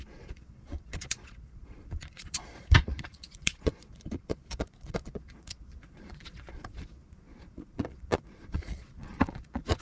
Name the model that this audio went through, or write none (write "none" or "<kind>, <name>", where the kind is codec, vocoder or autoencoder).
vocoder, Vocos